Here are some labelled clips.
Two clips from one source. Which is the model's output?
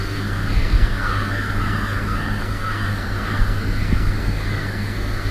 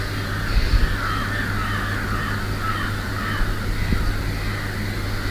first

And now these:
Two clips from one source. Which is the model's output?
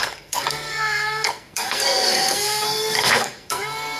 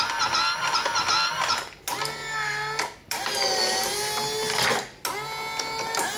first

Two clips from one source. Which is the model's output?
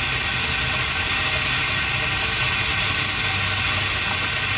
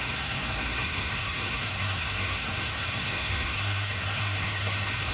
second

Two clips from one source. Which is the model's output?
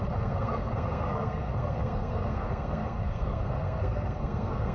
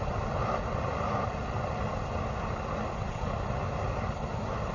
first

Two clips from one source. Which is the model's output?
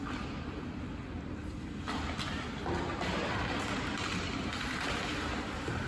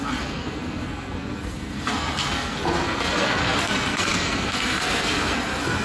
second